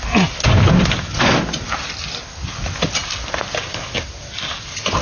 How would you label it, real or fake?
real